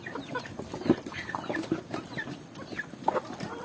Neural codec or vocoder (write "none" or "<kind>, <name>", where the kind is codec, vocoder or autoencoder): none